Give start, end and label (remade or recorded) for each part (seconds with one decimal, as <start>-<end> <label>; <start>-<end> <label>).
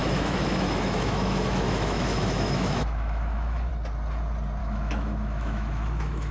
0.0-3.7 remade; 3.7-4.6 recorded; 4.6-6.3 remade